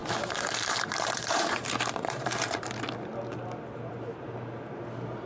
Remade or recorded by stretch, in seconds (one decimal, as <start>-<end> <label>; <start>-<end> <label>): 0.0-2.5 remade; 2.5-5.3 recorded